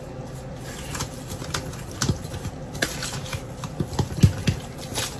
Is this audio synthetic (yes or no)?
no